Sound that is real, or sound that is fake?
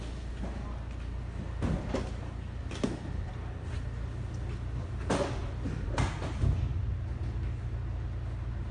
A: real